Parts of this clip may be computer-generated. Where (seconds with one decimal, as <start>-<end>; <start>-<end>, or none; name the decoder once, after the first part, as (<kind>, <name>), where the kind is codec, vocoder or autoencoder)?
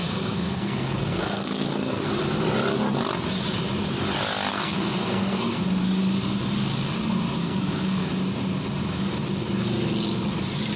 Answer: 0.0-2.1 (codec, SNAC); 4.5-5.6; 7.4-8.1